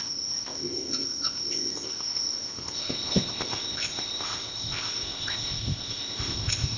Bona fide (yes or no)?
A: no